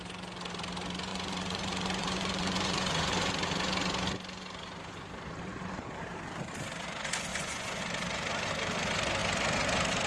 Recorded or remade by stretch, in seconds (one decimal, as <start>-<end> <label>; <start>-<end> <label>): 0.0-1.1 recorded; 1.1-3.1 remade; 3.1-7.3 recorded; 7.3-7.8 remade; 7.8-10.1 recorded